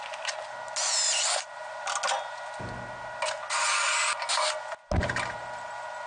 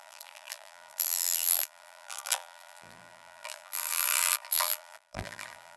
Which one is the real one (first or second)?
first